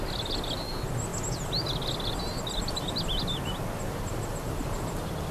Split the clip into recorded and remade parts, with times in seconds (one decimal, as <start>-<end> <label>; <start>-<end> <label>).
0.0-1.1 remade; 1.1-3.9 recorded; 3.9-5.3 remade